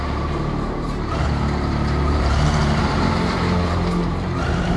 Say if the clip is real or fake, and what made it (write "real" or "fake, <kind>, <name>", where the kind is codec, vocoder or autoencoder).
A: fake, vocoder, BigVGAN v2